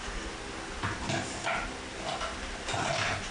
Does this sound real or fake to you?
real